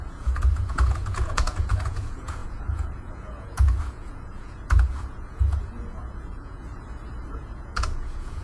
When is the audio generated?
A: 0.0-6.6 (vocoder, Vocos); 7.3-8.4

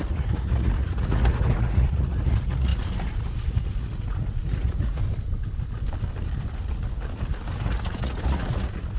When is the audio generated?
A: 0.0-5.0 (vocoder, Vocos); 7.5-9.0

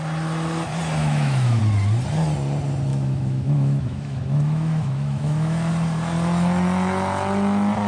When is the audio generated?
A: 1.0-1.6 (autoencoder, DAC-VAE); 2.9-5.7

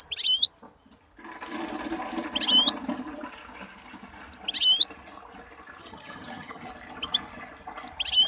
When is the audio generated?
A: 5.8-6.7 (vocoder, HiFi-GAN)

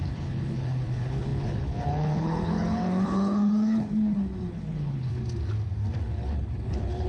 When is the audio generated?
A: 0.0-5.2 (codec, HILCodec); 6.0-7.1

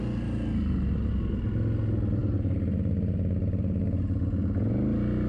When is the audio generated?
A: none

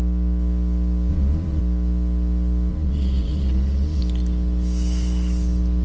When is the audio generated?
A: 1.1-1.6 (vocoder, Vocos); 2.7-4.0